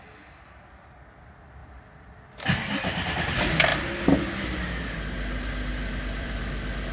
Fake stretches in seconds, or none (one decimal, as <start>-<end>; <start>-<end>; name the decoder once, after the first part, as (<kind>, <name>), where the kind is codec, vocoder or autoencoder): 1.6-3.3 (vocoder, BigVGAN v2); 5.7-6.5